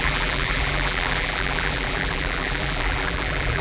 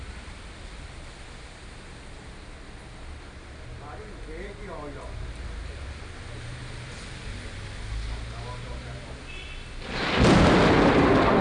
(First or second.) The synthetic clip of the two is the first